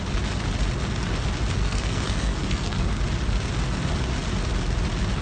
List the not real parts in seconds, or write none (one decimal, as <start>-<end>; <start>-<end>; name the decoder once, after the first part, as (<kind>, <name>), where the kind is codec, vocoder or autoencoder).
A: 1.6-3.0 (codec, SNAC)